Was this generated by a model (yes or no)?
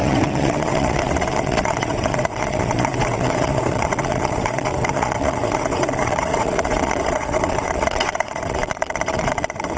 yes